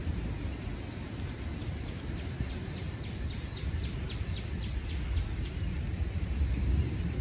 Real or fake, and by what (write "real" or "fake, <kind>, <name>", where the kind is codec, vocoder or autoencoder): real